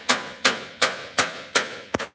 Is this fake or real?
fake